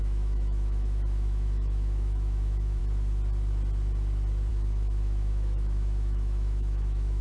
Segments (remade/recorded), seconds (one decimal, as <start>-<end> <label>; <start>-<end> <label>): 0.0-2.8 remade; 2.8-4.5 recorded; 4.5-7.2 remade